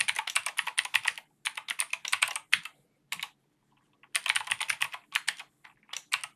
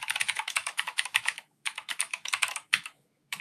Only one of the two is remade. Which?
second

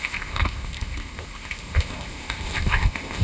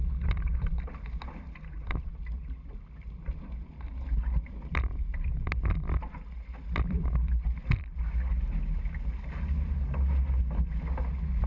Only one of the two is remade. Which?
first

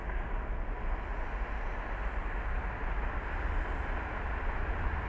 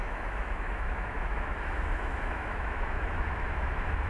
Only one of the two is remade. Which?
second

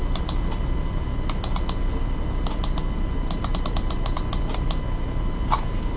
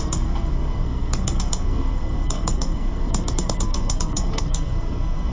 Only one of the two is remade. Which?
second